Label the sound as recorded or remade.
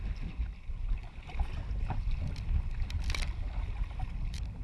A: recorded